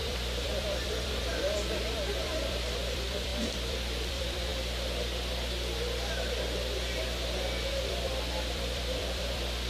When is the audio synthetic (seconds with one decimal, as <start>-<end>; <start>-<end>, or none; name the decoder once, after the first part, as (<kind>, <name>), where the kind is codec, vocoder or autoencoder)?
0.0-4.5 (vocoder, BigVGAN v2); 7.7-9.7